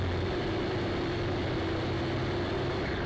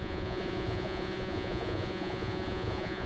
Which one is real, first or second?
first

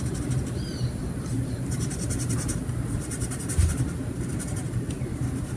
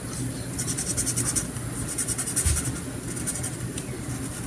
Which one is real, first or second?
second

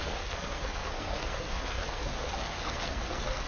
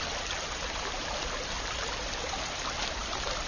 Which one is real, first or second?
second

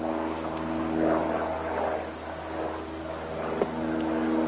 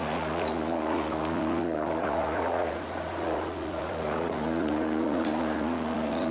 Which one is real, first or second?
first